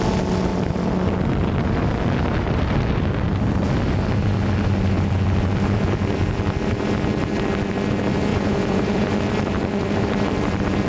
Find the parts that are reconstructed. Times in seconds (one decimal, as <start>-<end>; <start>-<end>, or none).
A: 8.3-9.1